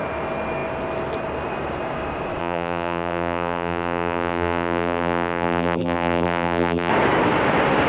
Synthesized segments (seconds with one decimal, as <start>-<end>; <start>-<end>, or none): 2.4-6.9